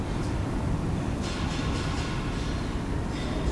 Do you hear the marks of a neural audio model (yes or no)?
no